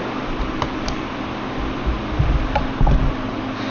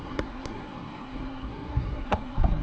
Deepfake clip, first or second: second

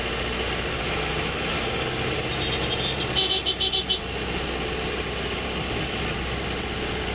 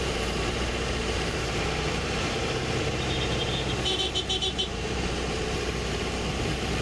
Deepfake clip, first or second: second